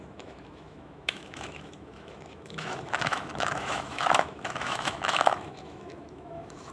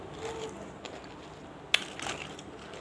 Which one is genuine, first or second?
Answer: second